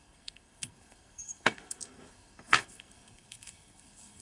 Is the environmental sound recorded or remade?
remade